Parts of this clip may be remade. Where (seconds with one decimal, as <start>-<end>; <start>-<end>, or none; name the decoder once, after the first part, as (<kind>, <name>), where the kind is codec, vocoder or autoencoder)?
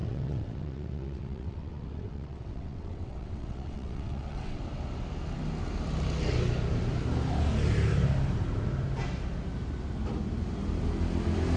0.0-4.6 (vocoder, WaveNeXt)